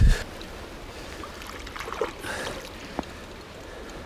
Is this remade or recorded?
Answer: recorded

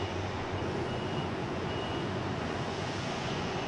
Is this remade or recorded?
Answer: remade